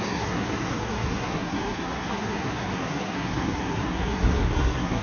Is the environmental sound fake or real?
fake